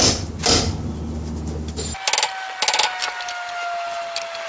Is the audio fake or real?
real